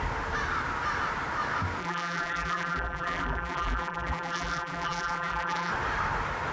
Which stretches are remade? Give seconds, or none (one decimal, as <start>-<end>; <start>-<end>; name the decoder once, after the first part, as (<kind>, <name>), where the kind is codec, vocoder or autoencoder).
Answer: 1.8-5.7 (vocoder, BigVGAN v2)